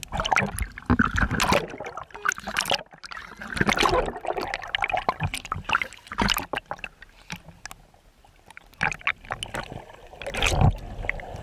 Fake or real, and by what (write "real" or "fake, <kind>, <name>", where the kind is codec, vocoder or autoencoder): real